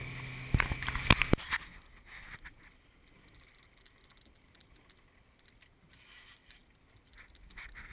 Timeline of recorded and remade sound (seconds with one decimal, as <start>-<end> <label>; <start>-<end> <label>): 0.0-7.9 recorded